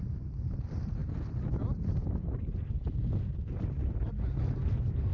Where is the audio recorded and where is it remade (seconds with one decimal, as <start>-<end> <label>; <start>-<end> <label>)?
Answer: 0.0-5.1 recorded